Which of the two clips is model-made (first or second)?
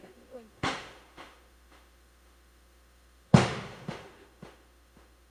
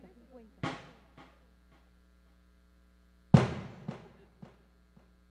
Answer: first